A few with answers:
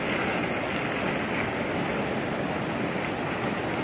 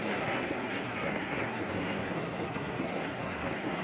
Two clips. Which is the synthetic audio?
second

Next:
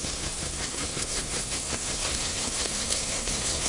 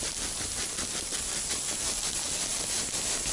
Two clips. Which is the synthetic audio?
first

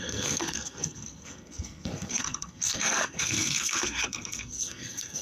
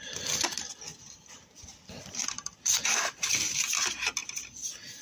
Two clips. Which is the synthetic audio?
first